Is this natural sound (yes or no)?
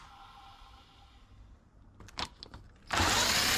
yes